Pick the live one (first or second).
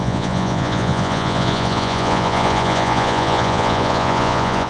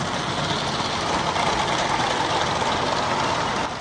second